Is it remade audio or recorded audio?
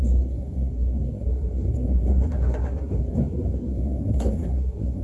remade